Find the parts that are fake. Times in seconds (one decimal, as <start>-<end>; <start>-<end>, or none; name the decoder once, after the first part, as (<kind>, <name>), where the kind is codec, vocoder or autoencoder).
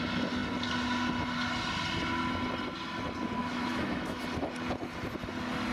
3.4-4.2 (autoencoder, DAC-VAE)